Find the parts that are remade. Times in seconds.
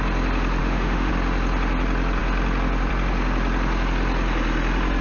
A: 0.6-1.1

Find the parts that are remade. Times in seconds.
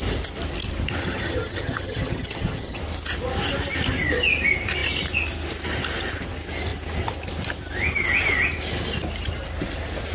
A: 1.0-2.8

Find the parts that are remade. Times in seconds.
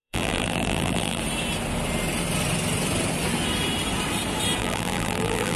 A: 0.0-1.2; 4.6-5.6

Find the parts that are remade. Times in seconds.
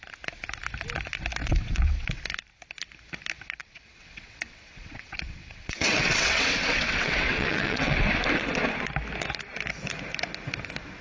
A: 1.4-2.2; 3.6-8.1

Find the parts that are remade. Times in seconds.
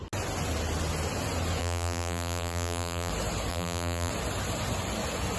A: 1.6-3.1; 3.5-4.1